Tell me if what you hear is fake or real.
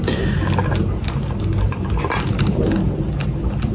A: real